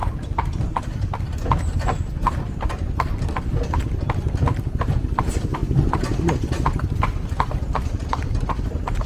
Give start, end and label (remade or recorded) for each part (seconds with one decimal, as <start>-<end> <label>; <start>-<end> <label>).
0.0-4.8 recorded; 4.8-9.1 remade